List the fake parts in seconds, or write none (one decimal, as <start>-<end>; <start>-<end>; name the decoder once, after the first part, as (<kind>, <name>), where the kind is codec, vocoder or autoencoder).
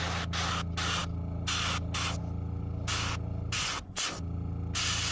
3.6-4.2 (vocoder, Vocos)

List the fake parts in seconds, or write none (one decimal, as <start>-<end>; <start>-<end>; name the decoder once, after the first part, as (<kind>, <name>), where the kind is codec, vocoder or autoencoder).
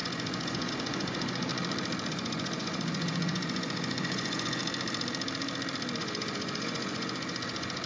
0.0-1.5 (vocoder, Vocos); 2.1-4.6; 6.0-7.9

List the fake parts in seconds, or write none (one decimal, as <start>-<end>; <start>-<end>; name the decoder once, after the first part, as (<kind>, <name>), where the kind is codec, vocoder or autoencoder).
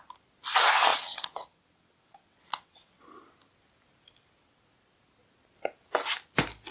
0.9-3.0 (vocoder, WaveNeXt)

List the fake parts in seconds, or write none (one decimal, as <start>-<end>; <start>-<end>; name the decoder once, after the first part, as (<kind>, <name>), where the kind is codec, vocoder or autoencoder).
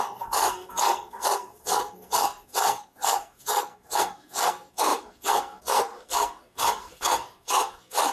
0.0-8.1 (codec, SNAC)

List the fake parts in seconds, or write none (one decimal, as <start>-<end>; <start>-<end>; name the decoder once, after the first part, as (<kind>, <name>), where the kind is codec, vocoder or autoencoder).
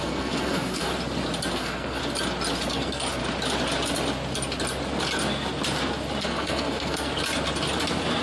0.0-0.9 (codec, SNAC); 1.5-2.0; 2.7-3.2; 6.2-7.1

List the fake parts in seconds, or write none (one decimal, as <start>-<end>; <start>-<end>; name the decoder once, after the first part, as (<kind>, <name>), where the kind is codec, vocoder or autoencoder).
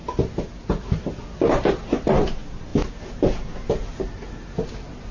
none